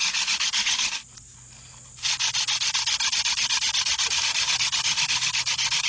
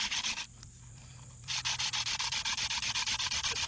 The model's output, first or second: second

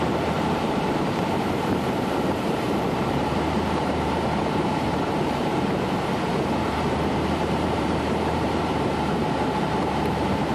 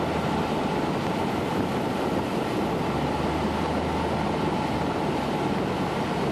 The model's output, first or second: first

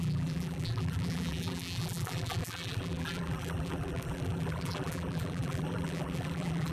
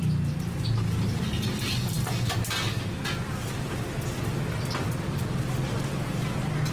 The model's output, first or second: first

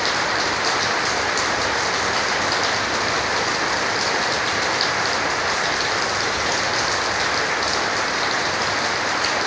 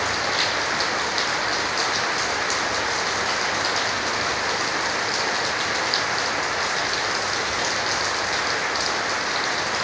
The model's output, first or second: first